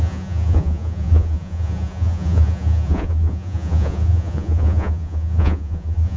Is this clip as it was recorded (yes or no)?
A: no